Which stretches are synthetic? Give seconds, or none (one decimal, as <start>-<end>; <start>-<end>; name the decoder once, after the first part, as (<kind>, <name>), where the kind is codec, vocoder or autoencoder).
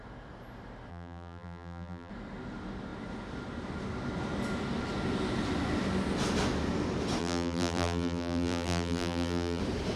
0.9-2.1 (vocoder, BigVGAN v2); 7.2-9.6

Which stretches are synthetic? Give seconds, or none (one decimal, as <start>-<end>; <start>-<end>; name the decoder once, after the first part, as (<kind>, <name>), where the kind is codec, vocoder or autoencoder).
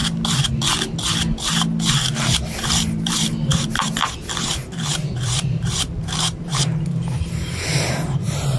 2.7-4.0 (vocoder, BigVGAN v2); 4.9-8.6